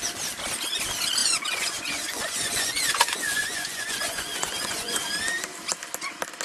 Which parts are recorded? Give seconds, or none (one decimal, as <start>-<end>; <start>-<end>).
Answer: 0.0-1.2; 5.0-6.4